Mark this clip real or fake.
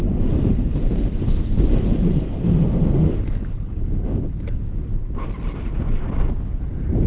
real